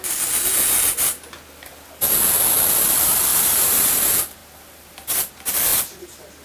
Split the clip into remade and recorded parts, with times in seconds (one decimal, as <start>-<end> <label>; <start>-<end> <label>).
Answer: 0.0-3.3 recorded; 3.3-3.9 remade; 3.9-4.4 recorded; 4.4-5.3 remade; 5.3-6.4 recorded